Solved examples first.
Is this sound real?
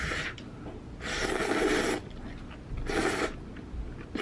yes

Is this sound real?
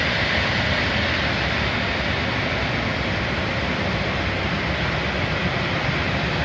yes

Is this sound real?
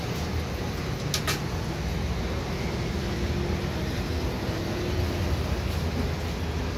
yes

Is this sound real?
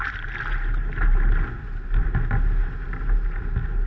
yes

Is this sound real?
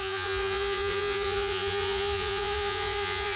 no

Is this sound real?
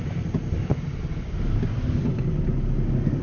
yes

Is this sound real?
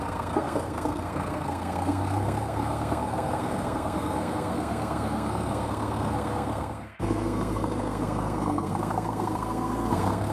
no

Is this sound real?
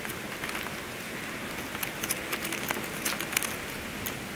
yes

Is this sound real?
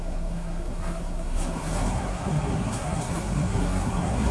no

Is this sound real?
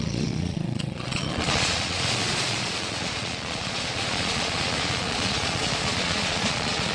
no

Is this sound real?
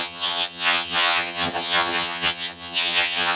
no